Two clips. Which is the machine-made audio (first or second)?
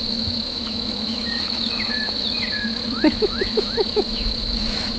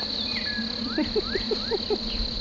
first